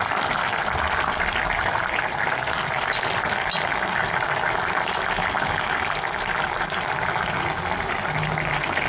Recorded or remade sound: recorded